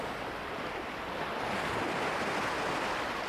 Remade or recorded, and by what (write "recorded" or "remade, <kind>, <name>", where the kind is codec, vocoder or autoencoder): recorded